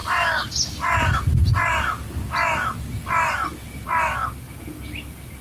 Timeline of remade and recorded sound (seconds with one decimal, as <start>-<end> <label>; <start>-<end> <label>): 0.0-5.4 recorded